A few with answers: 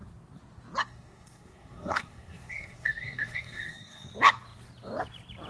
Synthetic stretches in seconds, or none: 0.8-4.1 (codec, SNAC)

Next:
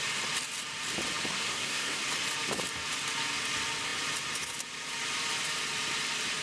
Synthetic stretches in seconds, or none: 1.3-2.0 (codec, SNAC)